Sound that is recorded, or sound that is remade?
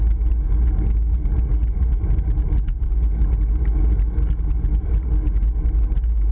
recorded